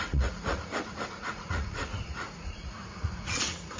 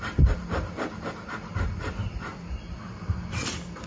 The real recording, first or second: second